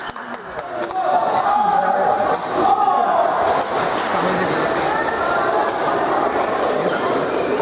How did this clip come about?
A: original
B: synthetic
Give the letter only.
A